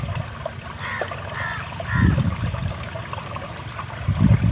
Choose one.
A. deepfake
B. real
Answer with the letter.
B